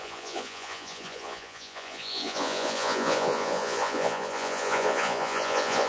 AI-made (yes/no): yes